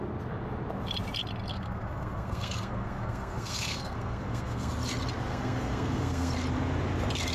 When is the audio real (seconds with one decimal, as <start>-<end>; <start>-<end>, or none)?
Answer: 0.0-1.5; 4.7-5.3; 6.3-7.3